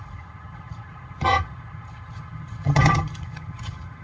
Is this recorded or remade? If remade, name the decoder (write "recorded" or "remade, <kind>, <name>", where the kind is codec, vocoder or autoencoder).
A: remade, vocoder, HiFi-GAN